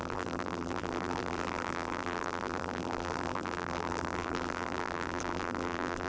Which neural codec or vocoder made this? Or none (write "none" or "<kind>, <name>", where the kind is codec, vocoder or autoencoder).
vocoder, BigVGAN v2